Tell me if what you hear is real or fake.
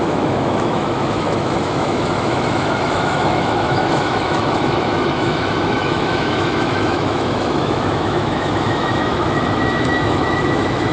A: fake